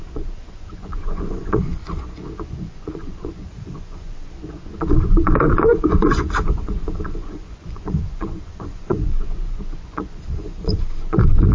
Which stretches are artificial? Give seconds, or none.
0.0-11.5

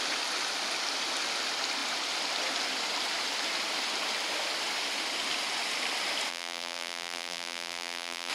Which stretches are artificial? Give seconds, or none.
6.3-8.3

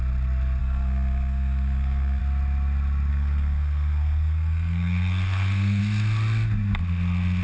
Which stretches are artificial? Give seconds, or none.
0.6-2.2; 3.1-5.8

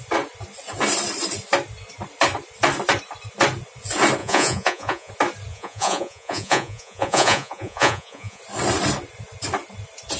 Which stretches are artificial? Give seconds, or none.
4.2-5.1; 5.5-8.4

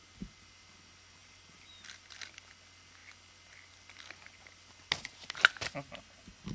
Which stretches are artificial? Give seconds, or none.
1.2-1.7